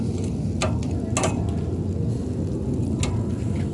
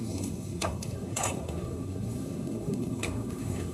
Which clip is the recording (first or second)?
first